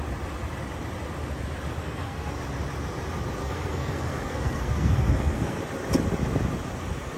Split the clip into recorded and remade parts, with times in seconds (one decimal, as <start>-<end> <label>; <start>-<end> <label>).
0.0-1.8 recorded; 1.8-2.3 remade; 2.3-3.4 recorded; 3.4-5.6 remade; 5.6-7.2 recorded